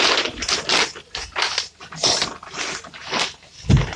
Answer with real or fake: real